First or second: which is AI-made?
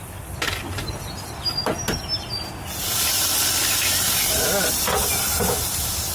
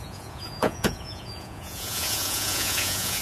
second